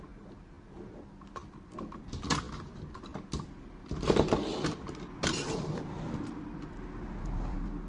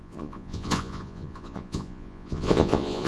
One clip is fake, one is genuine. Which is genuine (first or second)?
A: first